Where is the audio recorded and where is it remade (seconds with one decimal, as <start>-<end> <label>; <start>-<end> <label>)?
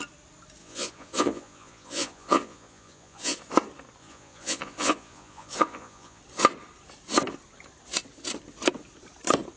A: 0.0-0.6 recorded; 0.6-3.4 remade; 3.4-4.0 recorded; 4.0-6.2 remade; 6.2-9.6 recorded